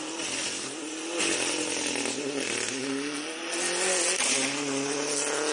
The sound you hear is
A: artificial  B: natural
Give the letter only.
B